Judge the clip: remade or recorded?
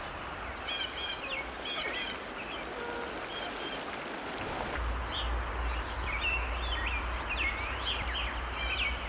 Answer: recorded